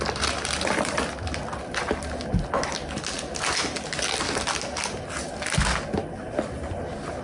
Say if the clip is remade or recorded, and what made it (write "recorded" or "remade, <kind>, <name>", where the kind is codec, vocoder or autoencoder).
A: recorded